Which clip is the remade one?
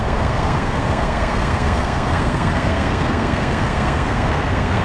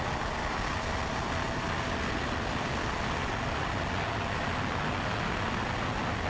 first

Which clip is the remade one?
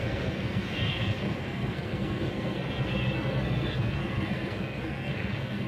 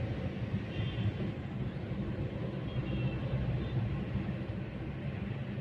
first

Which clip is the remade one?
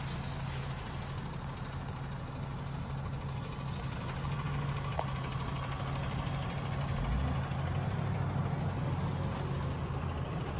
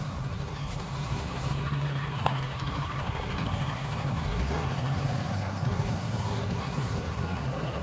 second